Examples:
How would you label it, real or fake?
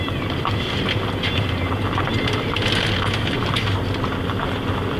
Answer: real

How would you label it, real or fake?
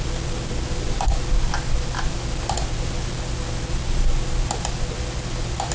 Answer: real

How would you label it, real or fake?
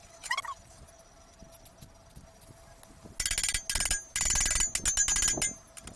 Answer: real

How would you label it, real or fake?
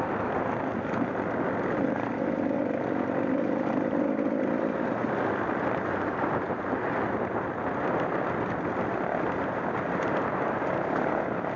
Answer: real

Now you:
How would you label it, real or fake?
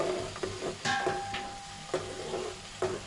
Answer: real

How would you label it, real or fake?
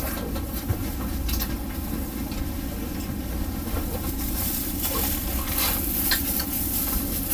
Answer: real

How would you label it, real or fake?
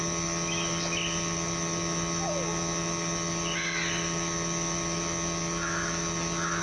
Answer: real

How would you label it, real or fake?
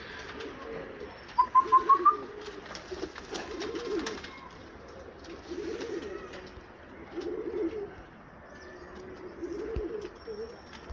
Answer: real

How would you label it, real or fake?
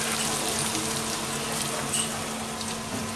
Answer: real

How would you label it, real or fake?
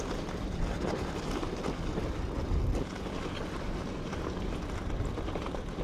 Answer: real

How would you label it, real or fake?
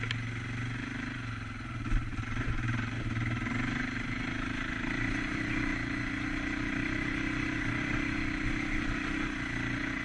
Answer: real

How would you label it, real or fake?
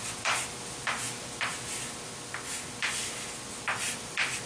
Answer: real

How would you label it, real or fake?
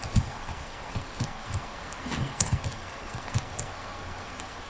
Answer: fake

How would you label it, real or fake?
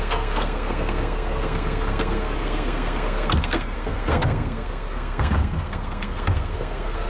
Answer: fake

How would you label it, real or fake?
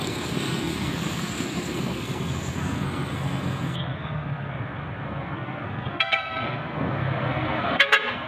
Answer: fake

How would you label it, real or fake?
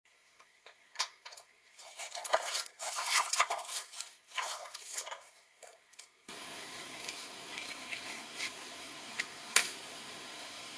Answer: fake